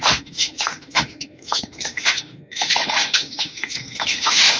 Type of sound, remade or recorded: remade